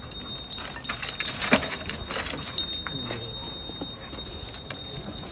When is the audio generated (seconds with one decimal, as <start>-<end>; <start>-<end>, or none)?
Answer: 4.3-5.3